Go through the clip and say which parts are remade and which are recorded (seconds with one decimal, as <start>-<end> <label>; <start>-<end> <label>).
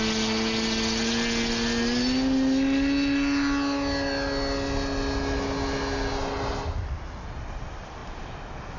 0.0-8.8 recorded